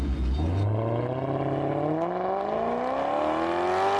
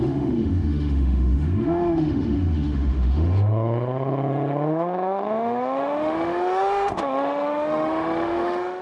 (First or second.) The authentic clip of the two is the first